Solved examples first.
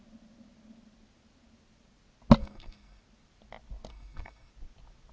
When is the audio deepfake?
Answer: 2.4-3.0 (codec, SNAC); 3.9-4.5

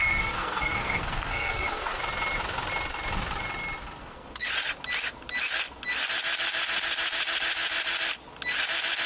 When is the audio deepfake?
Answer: 0.0-2.0 (codec, SNAC); 4.0-4.5

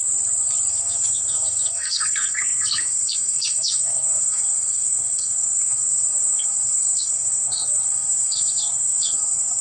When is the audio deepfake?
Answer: 0.7-9.6 (codec, SNAC)

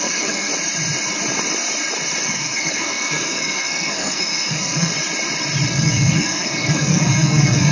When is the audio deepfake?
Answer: 0.0-0.5 (codec, SNAC); 2.2-4.9; 5.7-7.7

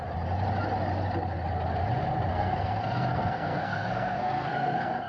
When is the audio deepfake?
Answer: 2.3-5.1 (codec, SNAC)